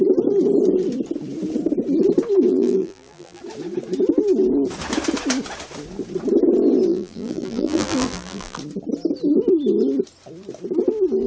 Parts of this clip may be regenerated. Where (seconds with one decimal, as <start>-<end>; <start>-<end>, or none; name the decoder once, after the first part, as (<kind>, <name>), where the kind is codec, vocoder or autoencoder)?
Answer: 2.5-3.4 (vocoder, BigVGAN v2); 6.9-8.6